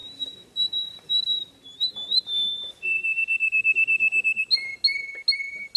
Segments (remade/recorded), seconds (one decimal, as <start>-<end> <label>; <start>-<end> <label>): 0.0-1.1 remade; 1.1-5.8 recorded